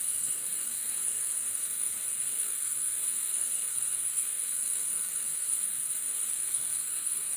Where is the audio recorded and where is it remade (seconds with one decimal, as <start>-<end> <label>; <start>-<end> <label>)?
0.0-7.4 remade

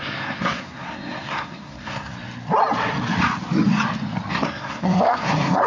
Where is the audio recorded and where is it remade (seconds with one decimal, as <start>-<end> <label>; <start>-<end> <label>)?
0.0-2.1 remade; 2.1-4.3 recorded; 4.3-5.7 remade

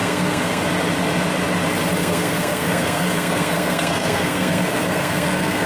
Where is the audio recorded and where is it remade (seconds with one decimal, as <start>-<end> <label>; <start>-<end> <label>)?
0.0-0.6 remade; 0.6-2.0 recorded; 2.0-5.7 remade

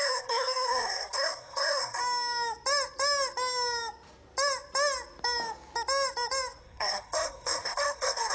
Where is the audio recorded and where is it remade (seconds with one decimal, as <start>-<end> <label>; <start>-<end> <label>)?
0.0-2.0 remade; 2.0-6.6 recorded; 6.6-8.3 remade

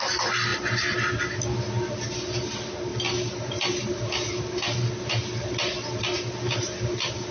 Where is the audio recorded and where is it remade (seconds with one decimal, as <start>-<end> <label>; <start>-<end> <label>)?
0.0-7.3 recorded